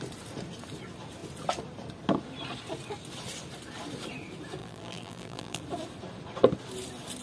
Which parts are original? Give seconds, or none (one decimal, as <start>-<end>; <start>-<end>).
0.0-4.6; 5.6-7.2